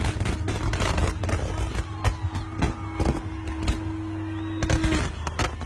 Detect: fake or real real